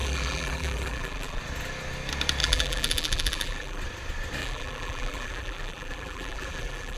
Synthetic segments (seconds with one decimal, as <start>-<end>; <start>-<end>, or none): 0.0-1.4; 2.4-3.8; 4.4-7.0